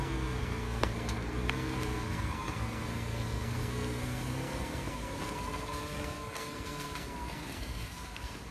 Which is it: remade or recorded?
remade